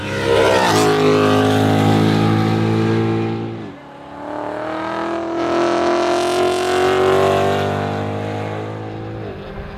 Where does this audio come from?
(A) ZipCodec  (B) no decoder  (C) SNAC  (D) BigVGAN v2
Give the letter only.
B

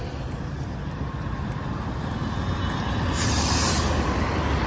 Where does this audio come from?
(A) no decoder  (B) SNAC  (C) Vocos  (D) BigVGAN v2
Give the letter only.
A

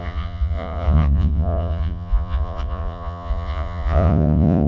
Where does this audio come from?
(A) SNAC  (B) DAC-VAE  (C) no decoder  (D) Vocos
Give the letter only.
D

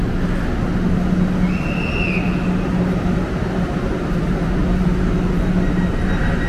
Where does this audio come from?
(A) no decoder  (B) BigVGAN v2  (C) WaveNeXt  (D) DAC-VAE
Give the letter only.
A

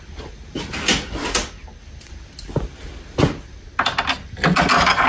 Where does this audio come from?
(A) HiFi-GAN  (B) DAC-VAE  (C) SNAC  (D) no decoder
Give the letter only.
D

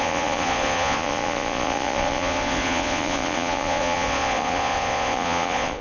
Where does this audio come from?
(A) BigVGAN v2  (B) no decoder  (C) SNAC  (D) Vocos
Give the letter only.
D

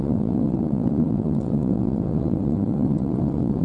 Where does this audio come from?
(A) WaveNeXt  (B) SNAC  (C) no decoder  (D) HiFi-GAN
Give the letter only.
A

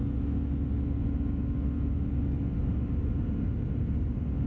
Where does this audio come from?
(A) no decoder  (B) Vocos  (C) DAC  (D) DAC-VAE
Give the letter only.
A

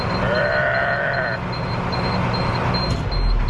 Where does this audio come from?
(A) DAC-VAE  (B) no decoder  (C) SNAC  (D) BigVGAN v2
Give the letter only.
B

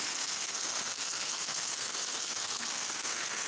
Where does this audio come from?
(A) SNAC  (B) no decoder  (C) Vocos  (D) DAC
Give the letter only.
A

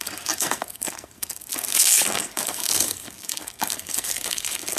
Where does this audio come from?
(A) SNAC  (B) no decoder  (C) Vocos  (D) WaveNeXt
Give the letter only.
A